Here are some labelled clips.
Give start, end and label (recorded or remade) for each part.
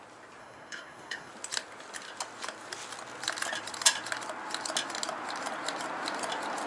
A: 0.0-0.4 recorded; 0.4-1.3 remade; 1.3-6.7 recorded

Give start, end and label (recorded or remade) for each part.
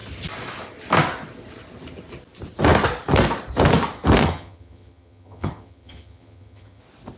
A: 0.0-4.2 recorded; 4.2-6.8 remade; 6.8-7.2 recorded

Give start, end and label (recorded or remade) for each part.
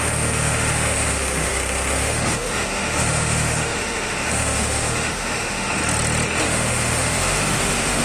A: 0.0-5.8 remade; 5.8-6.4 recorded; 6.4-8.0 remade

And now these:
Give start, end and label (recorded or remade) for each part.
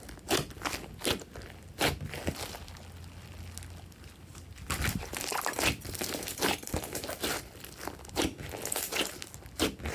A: 0.0-9.9 recorded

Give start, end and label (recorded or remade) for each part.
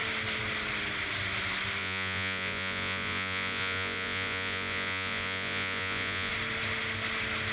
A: 0.0-1.8 recorded; 1.8-6.3 remade; 6.3-7.5 recorded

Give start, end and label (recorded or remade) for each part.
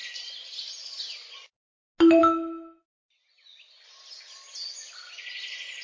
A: 0.0-5.8 recorded